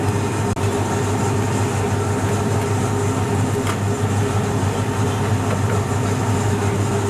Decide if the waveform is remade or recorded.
recorded